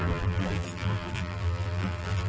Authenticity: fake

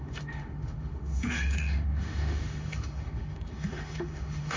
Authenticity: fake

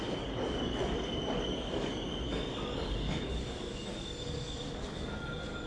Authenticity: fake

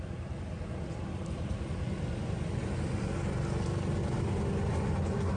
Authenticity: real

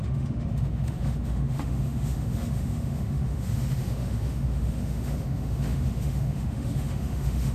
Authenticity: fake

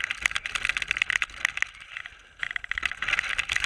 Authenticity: real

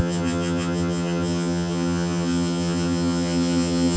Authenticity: fake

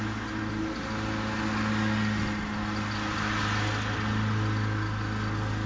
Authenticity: real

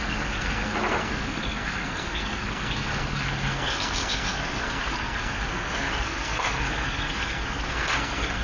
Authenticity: fake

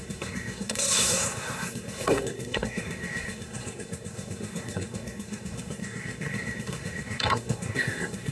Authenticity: fake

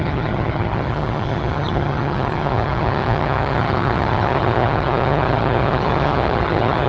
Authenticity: fake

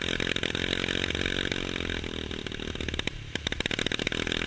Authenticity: real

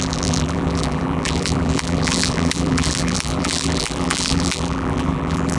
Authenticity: fake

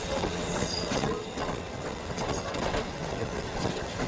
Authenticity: fake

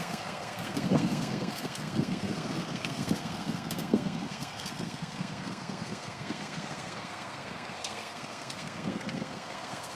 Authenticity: fake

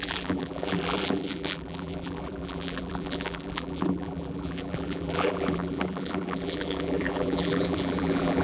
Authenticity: fake